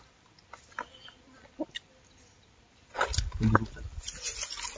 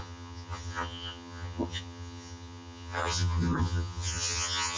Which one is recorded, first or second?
first